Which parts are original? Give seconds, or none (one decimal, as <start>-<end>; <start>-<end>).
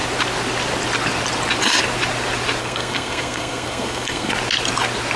0.0-2.6; 4.3-5.2